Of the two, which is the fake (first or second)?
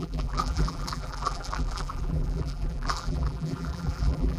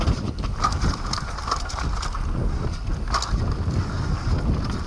first